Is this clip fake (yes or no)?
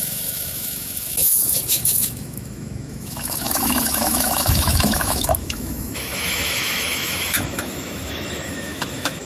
yes